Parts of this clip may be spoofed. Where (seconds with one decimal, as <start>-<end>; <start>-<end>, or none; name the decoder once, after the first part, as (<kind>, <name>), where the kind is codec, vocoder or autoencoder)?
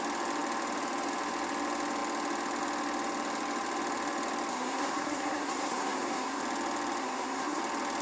4.5-6.4 (codec, SNAC); 7.0-7.6